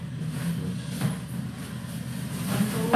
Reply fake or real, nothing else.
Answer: real